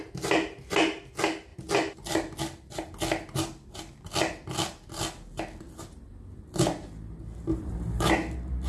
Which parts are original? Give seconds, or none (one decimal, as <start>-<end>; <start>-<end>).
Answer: 0.0-7.5; 8.1-8.7